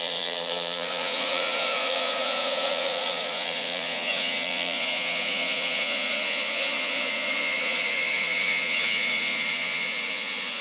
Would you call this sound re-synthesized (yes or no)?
yes